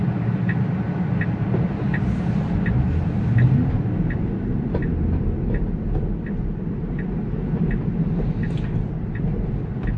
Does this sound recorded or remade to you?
recorded